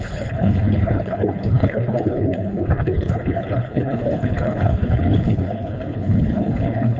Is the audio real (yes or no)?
no